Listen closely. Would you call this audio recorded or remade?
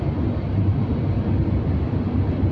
recorded